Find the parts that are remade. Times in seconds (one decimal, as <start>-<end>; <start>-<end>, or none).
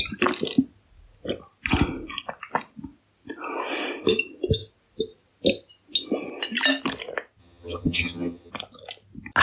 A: 7.4-8.5